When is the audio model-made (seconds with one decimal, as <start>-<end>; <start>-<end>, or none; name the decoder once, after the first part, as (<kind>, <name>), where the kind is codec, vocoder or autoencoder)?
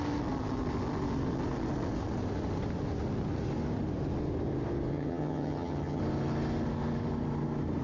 4.9-6.0 (vocoder, HiFi-GAN)